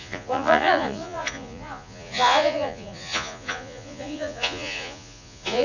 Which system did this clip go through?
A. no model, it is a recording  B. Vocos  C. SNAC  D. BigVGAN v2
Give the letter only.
B